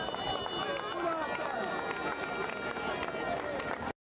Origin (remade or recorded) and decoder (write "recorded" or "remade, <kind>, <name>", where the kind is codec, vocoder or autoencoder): recorded